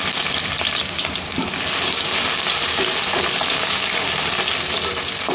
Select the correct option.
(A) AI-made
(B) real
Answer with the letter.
B